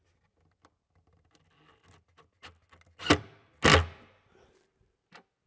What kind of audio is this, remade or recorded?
recorded